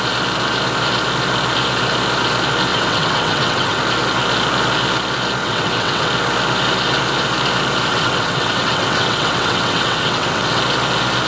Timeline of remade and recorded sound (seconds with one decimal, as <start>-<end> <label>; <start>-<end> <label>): 0.0-2.7 recorded; 2.7-3.8 remade; 3.8-5.4 recorded; 5.4-6.1 remade; 6.1-7.9 recorded; 7.9-10.6 remade; 10.6-11.3 recorded